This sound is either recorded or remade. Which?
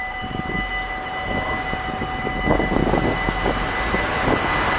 recorded